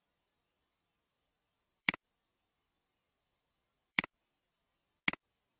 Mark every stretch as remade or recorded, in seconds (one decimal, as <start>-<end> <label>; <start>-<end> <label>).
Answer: 0.0-1.1 recorded; 1.1-4.5 remade; 4.5-5.6 recorded